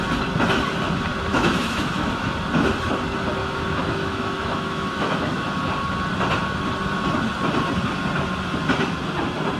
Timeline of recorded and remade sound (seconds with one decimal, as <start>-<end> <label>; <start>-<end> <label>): 0.0-1.3 recorded; 1.3-2.3 remade; 2.3-3.4 recorded; 3.4-5.6 remade; 5.6-9.6 recorded